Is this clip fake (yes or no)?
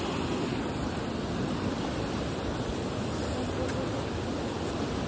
no